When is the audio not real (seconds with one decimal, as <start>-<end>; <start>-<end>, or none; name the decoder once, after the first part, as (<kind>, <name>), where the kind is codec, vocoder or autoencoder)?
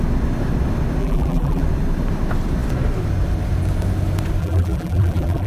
1.0-1.6 (vocoder, BigVGAN v2); 4.4-5.5